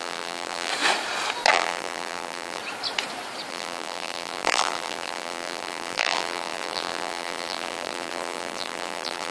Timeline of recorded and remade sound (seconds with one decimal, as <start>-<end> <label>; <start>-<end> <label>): 0.0-0.7 remade; 0.7-1.5 recorded; 1.5-2.6 remade; 2.6-3.5 recorded; 3.5-9.3 remade